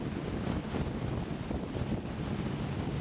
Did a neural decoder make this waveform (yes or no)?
no